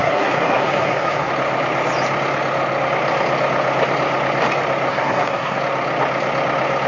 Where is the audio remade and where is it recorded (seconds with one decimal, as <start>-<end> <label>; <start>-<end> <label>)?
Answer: 0.0-1.3 remade; 1.3-4.9 recorded; 4.9-5.6 remade; 5.6-6.9 recorded